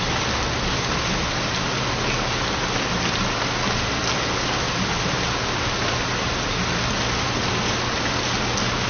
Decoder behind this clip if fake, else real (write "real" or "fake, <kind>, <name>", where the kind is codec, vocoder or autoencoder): real